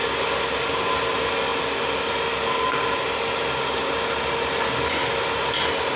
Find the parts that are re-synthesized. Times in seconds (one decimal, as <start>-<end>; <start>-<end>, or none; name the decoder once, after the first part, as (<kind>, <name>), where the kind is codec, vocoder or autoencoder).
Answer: 1.5-5.1 (vocoder, BigVGAN v2)